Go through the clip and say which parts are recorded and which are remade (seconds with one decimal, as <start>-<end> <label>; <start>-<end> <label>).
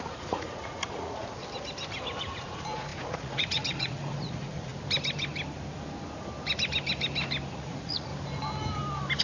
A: 0.0-1.4 remade; 1.4-2.3 recorded; 2.3-4.7 remade; 4.7-7.5 recorded; 7.5-8.1 remade; 8.1-9.2 recorded